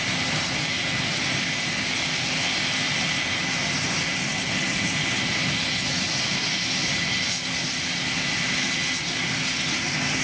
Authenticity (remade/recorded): recorded